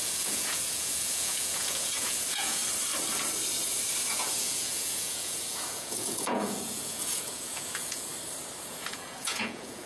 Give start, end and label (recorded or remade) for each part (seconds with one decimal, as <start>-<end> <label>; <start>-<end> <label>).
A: 0.0-2.6 remade; 2.6-4.1 recorded; 4.1-8.1 remade; 8.1-8.6 recorded; 8.6-9.9 remade